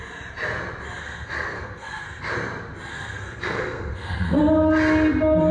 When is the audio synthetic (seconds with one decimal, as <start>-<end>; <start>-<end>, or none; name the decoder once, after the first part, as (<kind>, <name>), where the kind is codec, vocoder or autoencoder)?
1.0-2.2 (codec, SNAC); 2.9-4.4